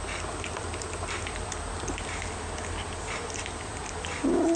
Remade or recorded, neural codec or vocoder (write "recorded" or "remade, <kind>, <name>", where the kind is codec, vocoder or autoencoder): recorded